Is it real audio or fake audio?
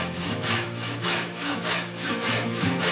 fake